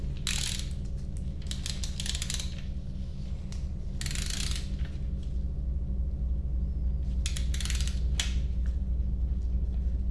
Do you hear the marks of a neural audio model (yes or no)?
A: no